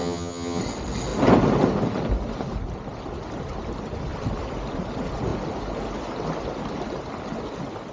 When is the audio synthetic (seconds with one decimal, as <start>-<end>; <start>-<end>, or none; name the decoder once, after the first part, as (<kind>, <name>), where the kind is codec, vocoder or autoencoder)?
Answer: 0.0-0.6 (vocoder, HiFi-GAN)